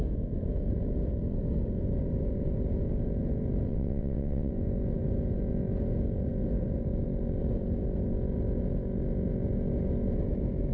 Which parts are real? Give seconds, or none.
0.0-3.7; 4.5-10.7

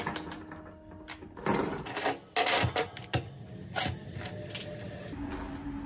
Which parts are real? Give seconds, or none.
0.0-5.9